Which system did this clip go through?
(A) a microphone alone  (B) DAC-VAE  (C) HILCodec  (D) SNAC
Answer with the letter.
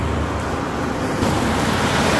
A